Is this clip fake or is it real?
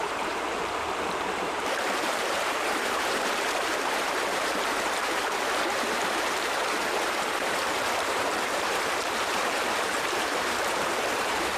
fake